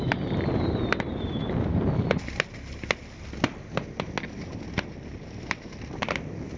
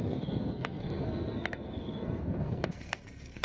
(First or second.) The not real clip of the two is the second